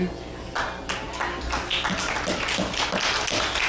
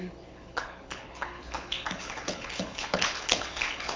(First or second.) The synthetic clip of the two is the second